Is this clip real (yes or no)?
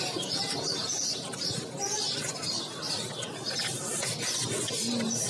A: yes